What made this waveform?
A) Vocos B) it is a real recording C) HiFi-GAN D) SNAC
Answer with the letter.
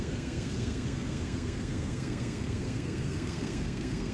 D